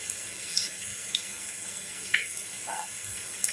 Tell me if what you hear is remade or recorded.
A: remade